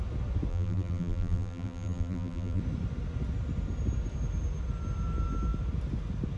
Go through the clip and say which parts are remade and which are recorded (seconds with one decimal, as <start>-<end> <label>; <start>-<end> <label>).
0.0-0.5 recorded; 0.5-2.6 remade; 2.6-6.4 recorded